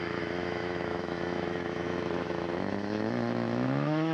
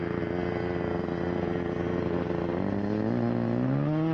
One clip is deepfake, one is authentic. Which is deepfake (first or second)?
first